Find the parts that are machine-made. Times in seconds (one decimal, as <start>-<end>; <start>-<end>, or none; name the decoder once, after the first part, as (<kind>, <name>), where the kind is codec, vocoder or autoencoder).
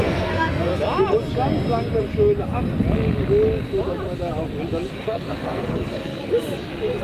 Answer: 0.0-0.7 (codec, SNAC); 4.9-6.1